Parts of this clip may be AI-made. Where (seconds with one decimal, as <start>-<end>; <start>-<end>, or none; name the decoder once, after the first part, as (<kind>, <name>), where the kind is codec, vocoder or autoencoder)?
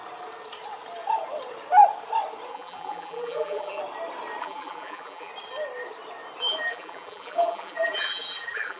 2.5-3.8 (vocoder, BigVGAN v2); 4.4-5.3; 6.4-8.8